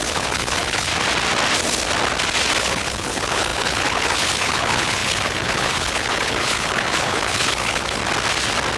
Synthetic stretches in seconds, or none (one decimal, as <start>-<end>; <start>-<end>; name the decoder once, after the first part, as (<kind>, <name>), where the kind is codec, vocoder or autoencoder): 0.0-0.9 (codec, HILCodec); 2.6-8.0